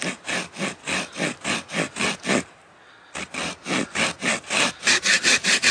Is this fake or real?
real